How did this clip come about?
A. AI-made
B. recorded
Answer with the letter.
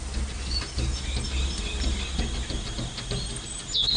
B